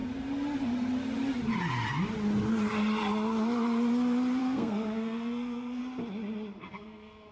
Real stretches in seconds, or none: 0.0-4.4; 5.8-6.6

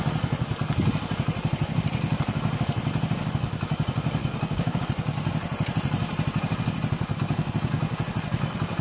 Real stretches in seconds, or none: 0.0-4.2; 4.8-8.8

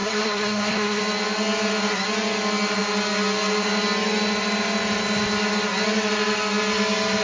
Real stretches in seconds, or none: 1.0-7.2